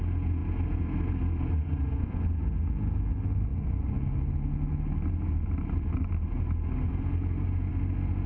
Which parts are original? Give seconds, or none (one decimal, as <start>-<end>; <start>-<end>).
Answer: 0.0-8.3